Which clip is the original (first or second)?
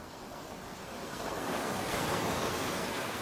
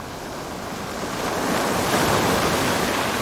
second